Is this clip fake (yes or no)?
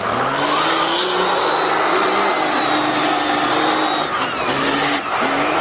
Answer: no